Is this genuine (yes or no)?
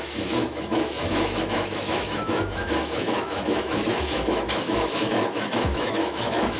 no